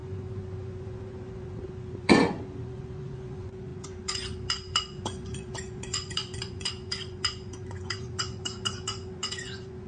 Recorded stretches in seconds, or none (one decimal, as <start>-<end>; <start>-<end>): none